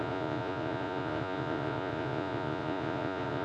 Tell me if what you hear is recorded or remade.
remade